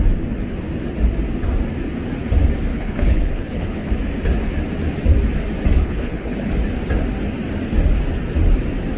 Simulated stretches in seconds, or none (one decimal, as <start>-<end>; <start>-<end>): 2.7-3.9; 5.8-6.5